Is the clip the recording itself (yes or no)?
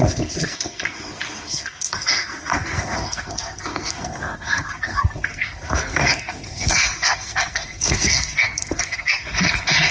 no